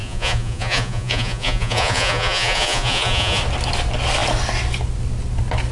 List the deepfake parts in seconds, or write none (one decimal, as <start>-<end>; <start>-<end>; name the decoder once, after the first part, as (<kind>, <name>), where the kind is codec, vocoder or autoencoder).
0.0-3.4 (vocoder, Vocos)